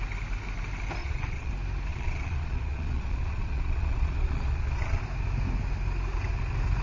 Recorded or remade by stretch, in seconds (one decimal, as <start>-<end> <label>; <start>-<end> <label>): 0.0-1.0 recorded; 1.0-1.5 remade; 1.5-1.9 recorded; 1.9-5.0 remade; 5.0-6.8 recorded